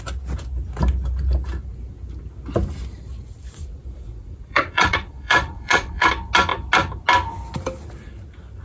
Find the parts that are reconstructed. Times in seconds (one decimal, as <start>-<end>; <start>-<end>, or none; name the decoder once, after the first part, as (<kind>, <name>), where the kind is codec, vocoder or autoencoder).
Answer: 3.6-6.1 (vocoder, Vocos)